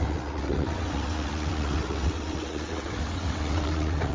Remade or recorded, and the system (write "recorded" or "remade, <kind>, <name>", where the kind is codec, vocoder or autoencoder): remade, vocoder, WaveNeXt